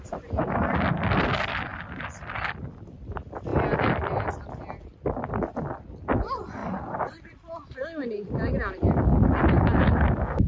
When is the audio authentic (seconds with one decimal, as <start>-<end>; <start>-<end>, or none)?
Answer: 0.0-10.5